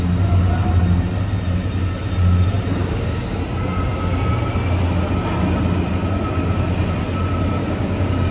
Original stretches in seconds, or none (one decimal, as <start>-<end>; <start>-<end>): 0.0-2.8; 3.4-7.6